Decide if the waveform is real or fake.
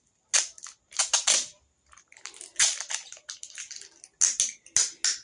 real